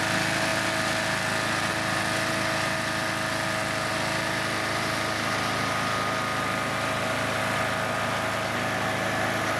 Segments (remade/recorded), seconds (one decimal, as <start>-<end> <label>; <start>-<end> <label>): 0.0-9.6 recorded